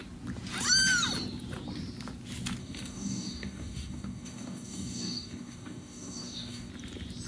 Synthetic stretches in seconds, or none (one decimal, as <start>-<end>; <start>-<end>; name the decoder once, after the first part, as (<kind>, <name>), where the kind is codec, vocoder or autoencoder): 2.6-6.7 (codec, DAC)